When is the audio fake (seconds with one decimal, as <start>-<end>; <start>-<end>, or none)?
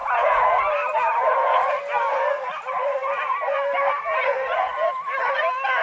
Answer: 0.0-0.6